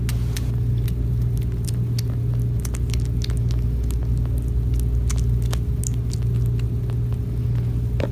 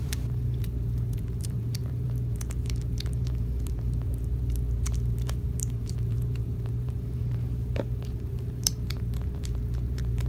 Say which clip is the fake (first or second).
second